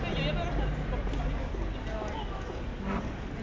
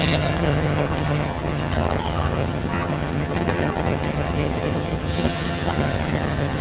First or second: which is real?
first